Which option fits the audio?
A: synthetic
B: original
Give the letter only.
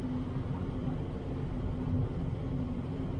B